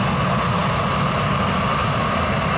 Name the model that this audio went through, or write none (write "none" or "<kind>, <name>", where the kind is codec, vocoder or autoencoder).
none